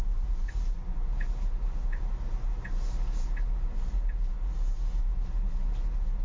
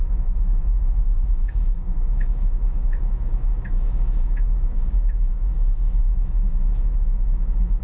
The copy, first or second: second